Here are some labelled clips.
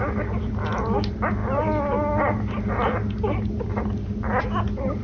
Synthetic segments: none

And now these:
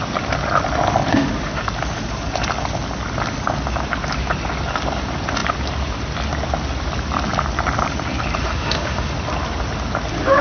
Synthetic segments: 1.1-1.6 (autoencoder, DAC-VAE); 8.4-9.1

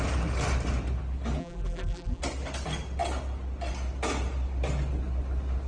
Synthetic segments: 1.4-2.2 (vocoder, BigVGAN v2)

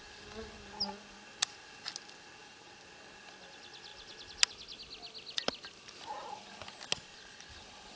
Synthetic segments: none

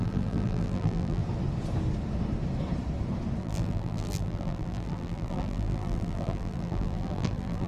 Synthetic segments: 0.0-1.2 (vocoder, BigVGAN v2); 3.4-7.7

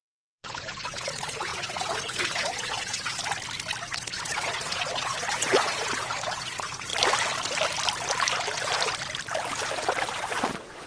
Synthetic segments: 0.0-3.2 (vocoder, Vocos); 3.8-6.9; 10.1-10.9

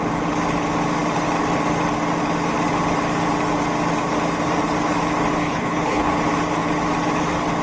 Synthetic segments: 5.4-6.1 (codec, HILCodec)